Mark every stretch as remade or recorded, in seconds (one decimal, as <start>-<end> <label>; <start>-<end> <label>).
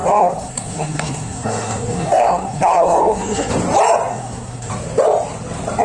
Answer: 0.0-3.5 remade; 3.5-4.1 recorded; 4.1-4.7 remade; 4.7-5.8 recorded